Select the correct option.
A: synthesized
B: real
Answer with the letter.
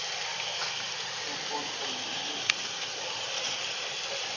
B